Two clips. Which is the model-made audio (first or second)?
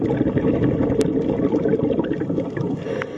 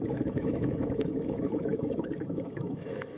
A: second